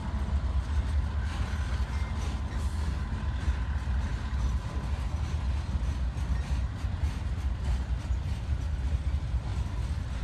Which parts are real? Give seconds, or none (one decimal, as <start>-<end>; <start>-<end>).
0.0-10.2